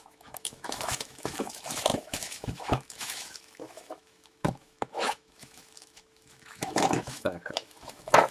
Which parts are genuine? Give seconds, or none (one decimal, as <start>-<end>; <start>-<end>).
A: none